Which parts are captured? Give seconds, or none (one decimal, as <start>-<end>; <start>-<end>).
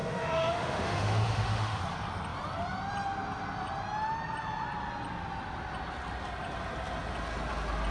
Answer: 1.8-7.9